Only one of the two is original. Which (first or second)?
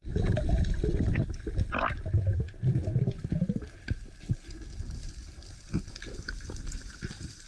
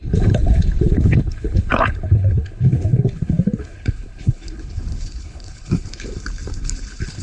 first